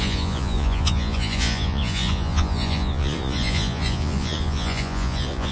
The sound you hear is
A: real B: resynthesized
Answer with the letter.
B